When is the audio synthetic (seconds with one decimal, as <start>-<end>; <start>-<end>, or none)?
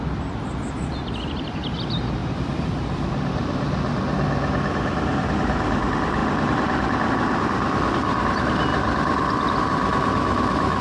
2.2-3.1; 6.2-7.1; 8.7-9.6